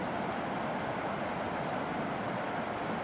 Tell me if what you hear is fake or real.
real